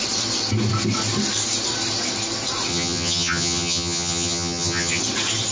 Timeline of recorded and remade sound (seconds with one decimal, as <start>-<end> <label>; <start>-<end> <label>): 0.0-2.7 recorded; 2.7-5.0 remade; 5.0-5.5 recorded